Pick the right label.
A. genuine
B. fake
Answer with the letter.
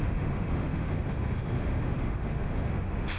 B